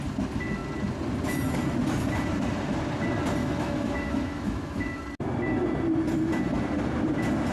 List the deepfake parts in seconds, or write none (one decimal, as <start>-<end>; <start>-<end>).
3.4-5.0